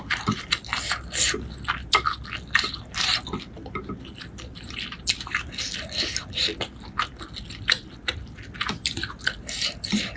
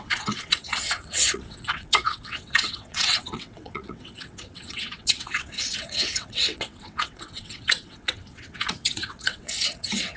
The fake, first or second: second